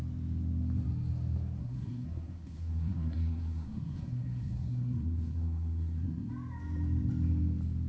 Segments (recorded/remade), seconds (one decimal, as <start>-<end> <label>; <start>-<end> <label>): 0.0-1.6 recorded; 1.6-6.3 remade; 6.3-7.9 recorded